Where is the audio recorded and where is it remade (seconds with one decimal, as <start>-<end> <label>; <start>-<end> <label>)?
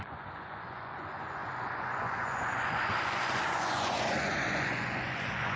0.0-5.6 remade